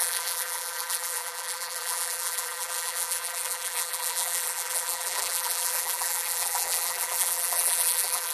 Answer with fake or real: fake